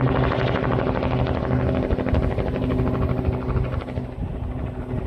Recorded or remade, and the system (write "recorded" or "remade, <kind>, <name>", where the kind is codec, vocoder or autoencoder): recorded